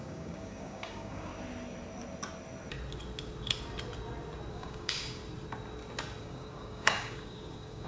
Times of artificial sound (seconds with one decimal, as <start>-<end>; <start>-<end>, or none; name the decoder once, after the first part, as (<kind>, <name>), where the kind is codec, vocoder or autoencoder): 0.0-1.3 (codec, DAC); 4.5-5.2; 6.2-7.9